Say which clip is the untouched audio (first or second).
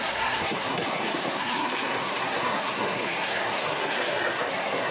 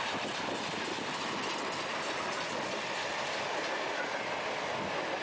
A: second